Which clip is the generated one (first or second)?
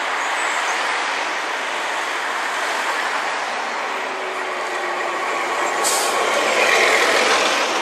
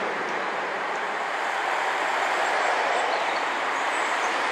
second